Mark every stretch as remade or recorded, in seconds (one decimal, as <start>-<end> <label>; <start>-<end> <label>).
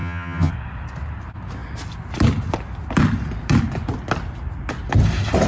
0.0-0.5 remade; 0.5-5.5 recorded